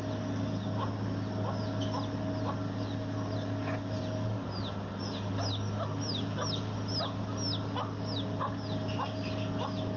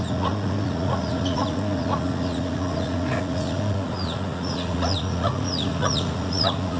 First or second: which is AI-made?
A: second